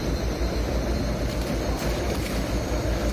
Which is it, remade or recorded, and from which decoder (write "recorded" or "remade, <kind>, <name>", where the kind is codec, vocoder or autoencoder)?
remade, vocoder, BigVGAN v2